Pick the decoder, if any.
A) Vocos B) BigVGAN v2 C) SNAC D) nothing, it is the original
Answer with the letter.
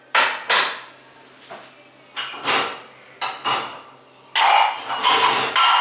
D